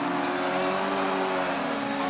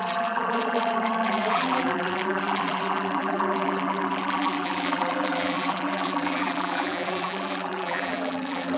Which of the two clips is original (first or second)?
first